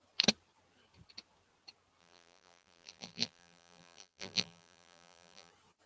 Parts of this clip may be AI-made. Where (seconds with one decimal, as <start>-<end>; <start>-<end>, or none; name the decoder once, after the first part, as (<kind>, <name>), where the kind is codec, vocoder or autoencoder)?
2.0-5.5 (vocoder, BigVGAN v2)